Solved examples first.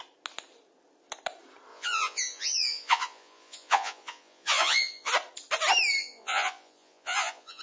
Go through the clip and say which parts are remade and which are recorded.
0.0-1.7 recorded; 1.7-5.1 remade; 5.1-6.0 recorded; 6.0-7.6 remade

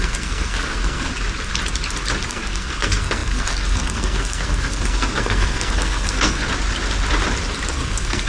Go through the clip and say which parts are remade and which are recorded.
0.0-1.1 remade; 1.1-2.3 recorded; 2.3-6.4 remade; 6.4-7.7 recorded; 7.7-8.3 remade

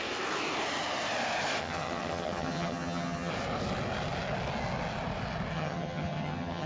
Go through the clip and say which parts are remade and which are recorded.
0.0-1.6 recorded; 1.6-3.3 remade; 3.3-5.5 recorded; 5.5-6.7 remade

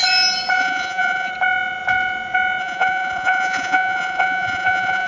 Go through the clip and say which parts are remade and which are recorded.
0.0-0.6 recorded; 0.6-1.3 remade; 1.3-2.6 recorded; 2.6-5.1 remade

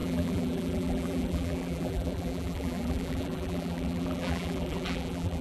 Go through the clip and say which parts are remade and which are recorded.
0.0-5.4 remade

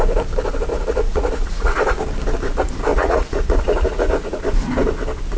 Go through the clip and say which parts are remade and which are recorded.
0.0-0.7 recorded; 0.7-1.8 remade; 1.8-2.9 recorded; 2.9-4.4 remade; 4.4-5.4 recorded